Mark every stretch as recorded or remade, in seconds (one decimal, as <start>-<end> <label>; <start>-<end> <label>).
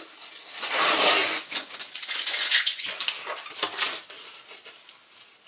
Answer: 0.0-1.2 recorded; 1.2-3.0 remade; 3.0-5.5 recorded